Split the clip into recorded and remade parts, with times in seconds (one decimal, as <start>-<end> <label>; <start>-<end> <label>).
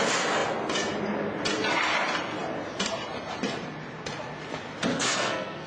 0.0-4.9 recorded; 4.9-5.7 remade